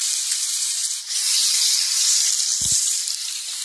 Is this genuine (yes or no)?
yes